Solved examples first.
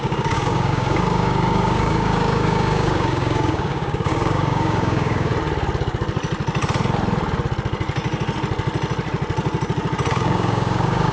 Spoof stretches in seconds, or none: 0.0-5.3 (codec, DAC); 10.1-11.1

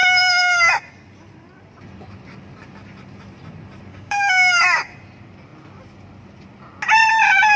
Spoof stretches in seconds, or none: 0.0-0.7 (codec, DAC); 3.9-4.6

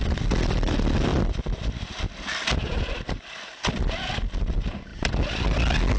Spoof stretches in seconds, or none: none